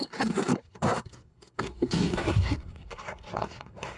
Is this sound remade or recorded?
remade